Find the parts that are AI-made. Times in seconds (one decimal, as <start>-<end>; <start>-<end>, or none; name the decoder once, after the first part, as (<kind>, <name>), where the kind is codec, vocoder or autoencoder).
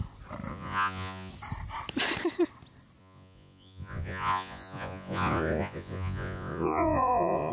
0.5-1.3 (vocoder, Vocos); 3.0-7.5